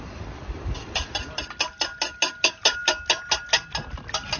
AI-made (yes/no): no